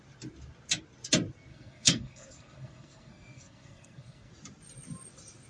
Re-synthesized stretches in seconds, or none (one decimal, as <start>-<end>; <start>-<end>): 1.5-4.3